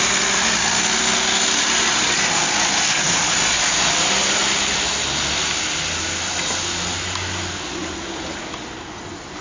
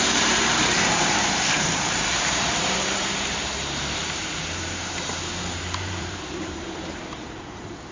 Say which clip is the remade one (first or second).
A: second